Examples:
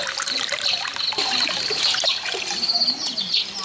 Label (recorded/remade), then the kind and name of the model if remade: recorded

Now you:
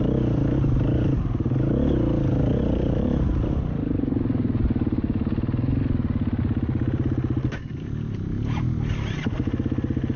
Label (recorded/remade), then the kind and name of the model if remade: recorded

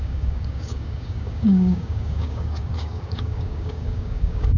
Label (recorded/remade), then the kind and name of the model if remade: remade, codec, DAC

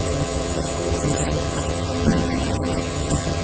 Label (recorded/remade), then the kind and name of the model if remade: remade, vocoder, HiFi-GAN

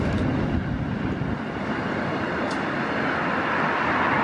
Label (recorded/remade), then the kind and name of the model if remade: recorded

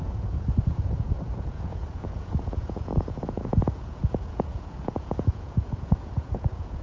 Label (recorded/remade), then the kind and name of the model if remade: remade, vocoder, Vocos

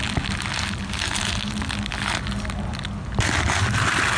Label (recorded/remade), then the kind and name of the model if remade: recorded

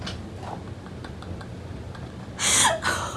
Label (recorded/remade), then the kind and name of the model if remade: recorded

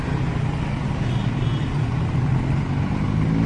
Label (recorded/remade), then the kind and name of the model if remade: recorded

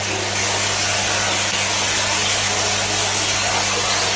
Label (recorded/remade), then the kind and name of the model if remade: recorded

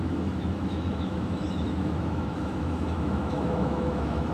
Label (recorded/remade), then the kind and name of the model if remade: remade, autoencoder, DAC-VAE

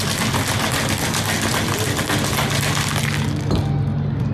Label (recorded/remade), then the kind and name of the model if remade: recorded